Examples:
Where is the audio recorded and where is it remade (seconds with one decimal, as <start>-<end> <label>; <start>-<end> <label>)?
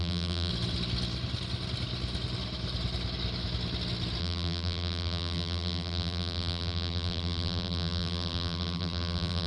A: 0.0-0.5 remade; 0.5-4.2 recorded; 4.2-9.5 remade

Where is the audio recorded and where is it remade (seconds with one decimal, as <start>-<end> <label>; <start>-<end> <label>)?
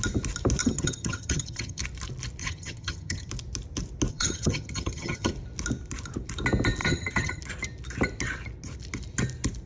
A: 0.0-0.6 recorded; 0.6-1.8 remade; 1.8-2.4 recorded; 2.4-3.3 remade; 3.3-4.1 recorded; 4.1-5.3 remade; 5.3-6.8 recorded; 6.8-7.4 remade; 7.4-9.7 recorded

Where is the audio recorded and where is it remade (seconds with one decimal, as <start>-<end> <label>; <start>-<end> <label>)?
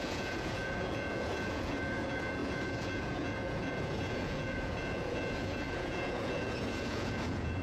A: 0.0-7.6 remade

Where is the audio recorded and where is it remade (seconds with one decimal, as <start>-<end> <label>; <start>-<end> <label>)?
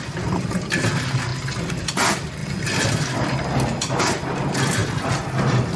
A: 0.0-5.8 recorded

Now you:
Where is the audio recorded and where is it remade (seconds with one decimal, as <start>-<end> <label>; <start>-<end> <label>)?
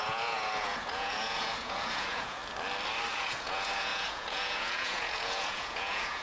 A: 0.0-2.4 remade; 2.4-3.1 recorded; 3.1-6.2 remade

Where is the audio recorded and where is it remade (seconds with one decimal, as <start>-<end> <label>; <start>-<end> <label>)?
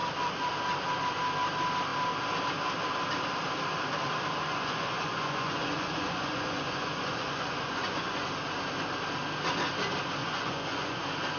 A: 0.0-4.4 recorded; 4.4-8.3 remade; 8.3-10.2 recorded; 10.2-11.0 remade; 11.0-11.4 recorded